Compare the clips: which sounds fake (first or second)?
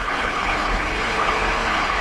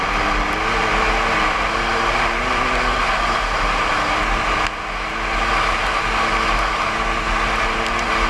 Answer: first